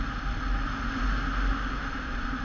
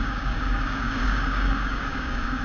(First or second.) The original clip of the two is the first